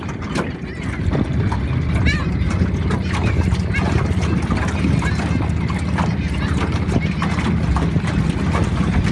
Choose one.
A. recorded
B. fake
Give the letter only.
A